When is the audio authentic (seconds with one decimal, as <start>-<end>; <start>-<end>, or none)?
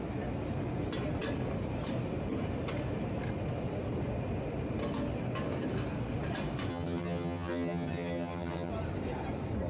0.0-6.7; 8.7-9.7